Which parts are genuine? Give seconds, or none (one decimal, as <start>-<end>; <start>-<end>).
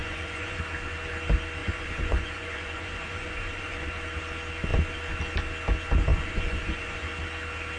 0.6-1.6; 3.9-6.1; 7.1-7.8